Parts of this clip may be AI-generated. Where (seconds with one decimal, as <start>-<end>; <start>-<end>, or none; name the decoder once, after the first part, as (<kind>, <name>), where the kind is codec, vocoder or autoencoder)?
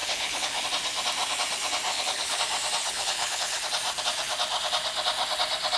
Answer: 0.0-0.6 (codec, HILCodec); 1.9-2.4; 2.8-3.6